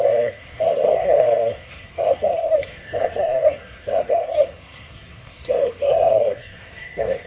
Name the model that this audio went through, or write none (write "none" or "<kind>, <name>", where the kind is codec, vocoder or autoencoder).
codec, SNAC